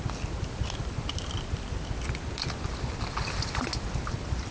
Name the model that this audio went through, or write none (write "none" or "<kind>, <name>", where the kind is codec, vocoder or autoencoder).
none